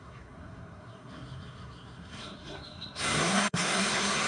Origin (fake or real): fake